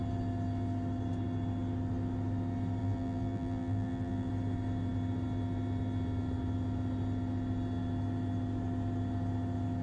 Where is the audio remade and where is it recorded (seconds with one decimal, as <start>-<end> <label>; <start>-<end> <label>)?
0.0-2.8 recorded; 2.8-4.3 remade; 4.3-9.8 recorded